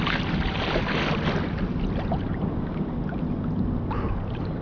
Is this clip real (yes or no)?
yes